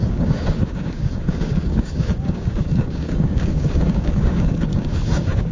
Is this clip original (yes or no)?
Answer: no